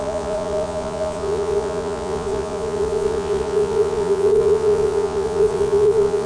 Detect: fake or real fake